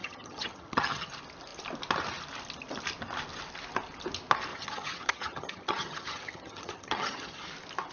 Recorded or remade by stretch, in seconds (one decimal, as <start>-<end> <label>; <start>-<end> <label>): 0.0-1.1 remade; 1.1-4.5 recorded; 4.5-7.5 remade; 7.5-7.9 recorded